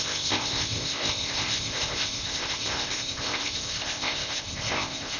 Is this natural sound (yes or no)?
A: no